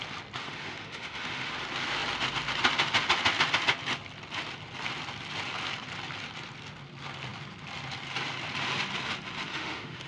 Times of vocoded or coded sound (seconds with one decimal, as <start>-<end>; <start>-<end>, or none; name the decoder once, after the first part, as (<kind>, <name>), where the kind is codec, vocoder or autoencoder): 0.4-1.5 (autoencoder, DAC-VAE); 9.5-10.1